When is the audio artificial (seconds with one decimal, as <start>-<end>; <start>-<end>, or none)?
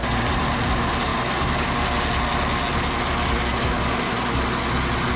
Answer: none